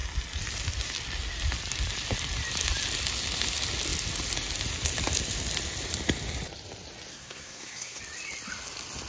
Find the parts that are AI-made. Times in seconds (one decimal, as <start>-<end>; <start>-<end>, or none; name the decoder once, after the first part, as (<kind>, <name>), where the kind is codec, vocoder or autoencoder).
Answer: 7.1-8.0 (codec, SNAC)